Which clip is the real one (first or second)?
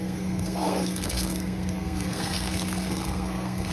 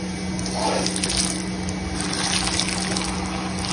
second